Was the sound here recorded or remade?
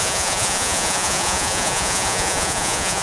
remade